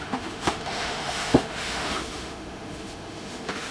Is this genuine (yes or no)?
no